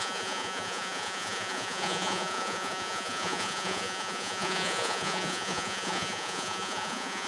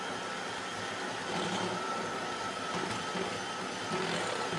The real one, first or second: second